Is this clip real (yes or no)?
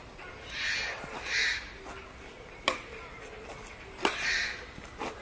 yes